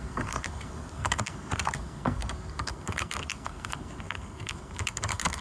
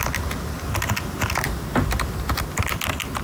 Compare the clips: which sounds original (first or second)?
second